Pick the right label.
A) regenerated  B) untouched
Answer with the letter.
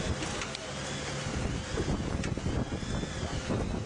B